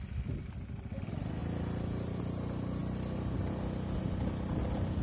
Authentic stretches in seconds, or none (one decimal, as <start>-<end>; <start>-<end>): 0.0-5.0